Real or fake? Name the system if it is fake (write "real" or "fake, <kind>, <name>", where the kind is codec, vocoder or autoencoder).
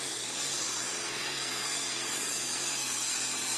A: fake, codec, SNAC